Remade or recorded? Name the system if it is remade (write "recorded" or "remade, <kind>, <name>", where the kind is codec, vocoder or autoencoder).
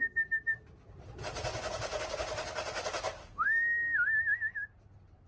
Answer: recorded